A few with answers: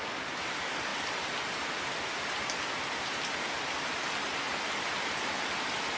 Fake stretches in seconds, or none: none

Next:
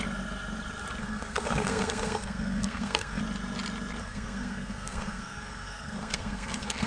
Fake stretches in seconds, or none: 1.0-3.2; 4.0-6.9

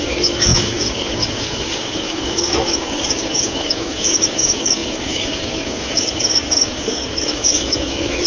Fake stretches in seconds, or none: 0.0-8.3

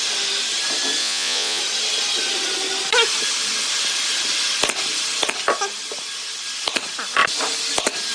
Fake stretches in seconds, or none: 1.0-1.6

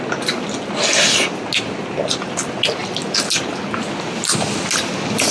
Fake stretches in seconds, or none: none

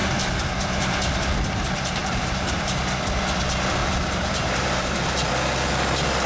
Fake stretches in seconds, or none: 0.0-2.9; 3.8-5.3

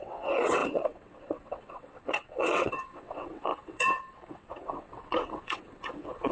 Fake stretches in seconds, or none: 0.0-6.3

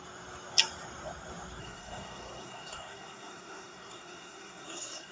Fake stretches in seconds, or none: 1.6-5.1